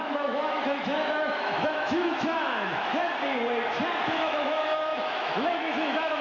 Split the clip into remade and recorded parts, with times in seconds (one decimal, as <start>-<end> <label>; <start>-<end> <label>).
0.0-3.0 remade; 3.0-4.0 recorded; 4.0-6.2 remade

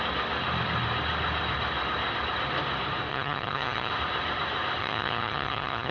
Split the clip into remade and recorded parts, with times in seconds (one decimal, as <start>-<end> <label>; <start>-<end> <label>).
0.0-3.1 recorded; 3.1-3.9 remade; 3.9-4.8 recorded; 4.8-5.9 remade

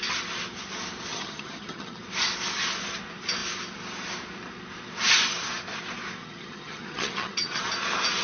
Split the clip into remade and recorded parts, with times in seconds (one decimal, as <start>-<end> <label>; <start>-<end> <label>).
0.0-1.1 recorded; 1.1-2.0 remade; 2.0-6.2 recorded; 6.2-7.6 remade; 7.6-8.2 recorded

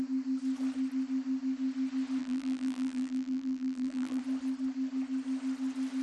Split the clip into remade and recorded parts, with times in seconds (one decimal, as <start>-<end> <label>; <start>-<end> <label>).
0.0-2.2 recorded; 2.2-4.2 remade; 4.2-6.0 recorded

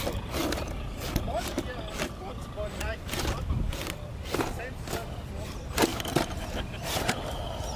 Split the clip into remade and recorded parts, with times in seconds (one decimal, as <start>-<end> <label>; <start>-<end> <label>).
0.0-5.9 recorded; 5.9-7.2 remade; 7.2-7.8 recorded